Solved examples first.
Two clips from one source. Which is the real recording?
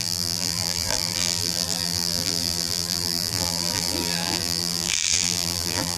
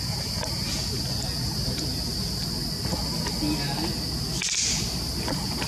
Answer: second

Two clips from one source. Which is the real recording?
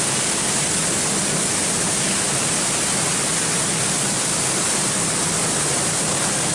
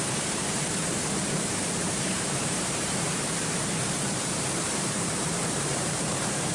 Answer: first